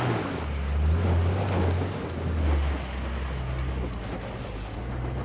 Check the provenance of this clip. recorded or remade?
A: recorded